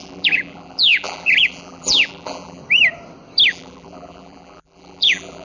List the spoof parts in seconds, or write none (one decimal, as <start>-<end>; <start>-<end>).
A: 0.0-2.6; 3.5-5.4